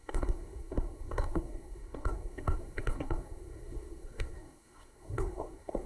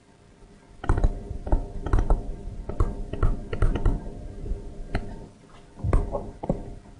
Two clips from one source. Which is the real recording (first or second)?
second